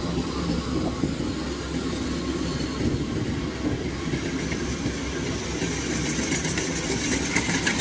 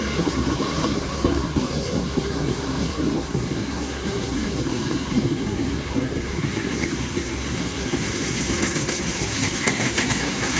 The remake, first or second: second